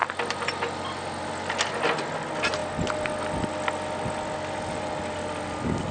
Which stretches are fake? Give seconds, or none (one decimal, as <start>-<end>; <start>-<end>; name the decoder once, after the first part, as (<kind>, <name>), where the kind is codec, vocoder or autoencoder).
none

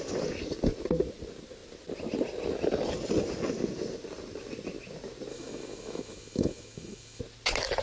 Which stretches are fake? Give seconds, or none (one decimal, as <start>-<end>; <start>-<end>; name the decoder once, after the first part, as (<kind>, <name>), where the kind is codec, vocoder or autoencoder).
5.3-7.2 (autoencoder, DAC-VAE)

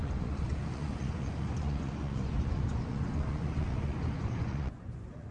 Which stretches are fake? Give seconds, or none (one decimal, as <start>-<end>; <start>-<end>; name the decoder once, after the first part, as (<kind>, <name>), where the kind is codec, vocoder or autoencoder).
0.0-5.3 (vocoder, Vocos)